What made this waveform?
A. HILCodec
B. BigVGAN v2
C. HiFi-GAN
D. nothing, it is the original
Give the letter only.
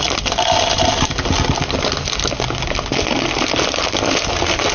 D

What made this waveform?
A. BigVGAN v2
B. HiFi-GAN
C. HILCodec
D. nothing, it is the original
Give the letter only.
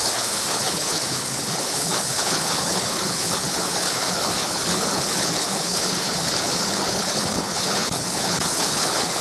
C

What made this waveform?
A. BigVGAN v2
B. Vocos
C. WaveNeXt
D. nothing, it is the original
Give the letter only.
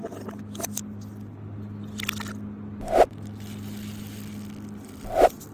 D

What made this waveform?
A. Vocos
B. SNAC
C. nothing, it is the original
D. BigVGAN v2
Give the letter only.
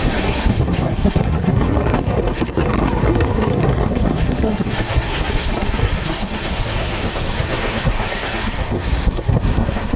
B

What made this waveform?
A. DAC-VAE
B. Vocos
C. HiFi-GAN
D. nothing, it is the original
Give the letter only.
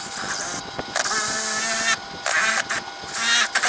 D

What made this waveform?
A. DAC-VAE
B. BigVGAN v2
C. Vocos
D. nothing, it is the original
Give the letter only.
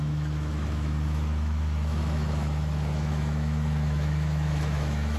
A